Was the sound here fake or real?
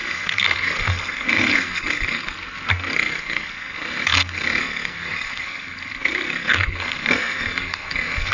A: fake